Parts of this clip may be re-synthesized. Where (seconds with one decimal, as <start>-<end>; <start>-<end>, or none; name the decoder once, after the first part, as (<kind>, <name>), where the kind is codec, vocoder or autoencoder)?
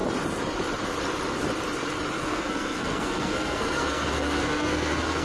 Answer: 2.2-5.2 (codec, SNAC)